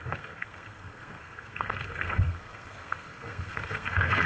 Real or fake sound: fake